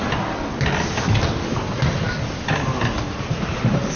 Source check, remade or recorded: recorded